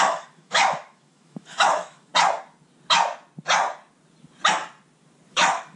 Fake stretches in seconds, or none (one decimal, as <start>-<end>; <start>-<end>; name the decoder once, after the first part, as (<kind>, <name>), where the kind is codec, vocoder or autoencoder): 0.0-2.1 (autoencoder, DAC-VAE); 5.3-5.8